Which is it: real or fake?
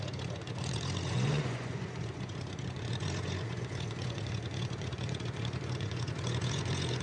fake